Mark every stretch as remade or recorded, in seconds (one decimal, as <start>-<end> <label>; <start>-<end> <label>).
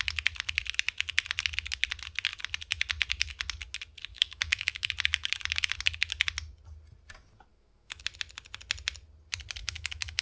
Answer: 0.0-4.1 recorded; 4.1-4.9 remade; 4.9-7.5 recorded; 7.5-8.0 remade; 8.0-9.6 recorded; 9.6-10.2 remade